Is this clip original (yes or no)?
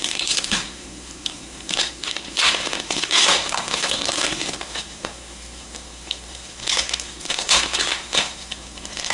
no